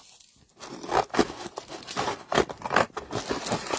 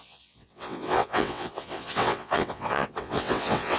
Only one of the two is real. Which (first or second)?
first